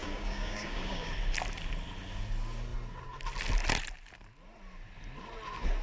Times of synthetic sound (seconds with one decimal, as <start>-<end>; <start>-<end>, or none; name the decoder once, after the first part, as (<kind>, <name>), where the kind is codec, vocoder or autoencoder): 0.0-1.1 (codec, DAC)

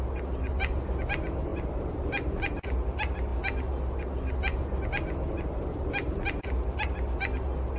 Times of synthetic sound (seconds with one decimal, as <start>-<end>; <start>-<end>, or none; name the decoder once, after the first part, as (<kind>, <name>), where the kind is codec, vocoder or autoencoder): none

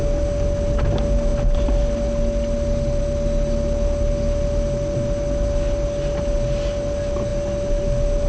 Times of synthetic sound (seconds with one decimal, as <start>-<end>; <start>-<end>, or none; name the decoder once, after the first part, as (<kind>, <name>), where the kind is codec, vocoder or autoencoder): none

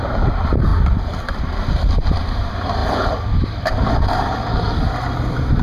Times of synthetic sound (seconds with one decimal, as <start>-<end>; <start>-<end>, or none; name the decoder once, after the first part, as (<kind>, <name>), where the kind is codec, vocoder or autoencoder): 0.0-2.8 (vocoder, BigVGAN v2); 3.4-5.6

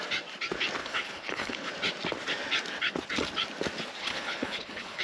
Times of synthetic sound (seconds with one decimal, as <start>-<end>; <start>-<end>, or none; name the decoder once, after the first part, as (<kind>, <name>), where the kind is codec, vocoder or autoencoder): 0.8-1.7 (codec, HILCodec); 4.0-5.0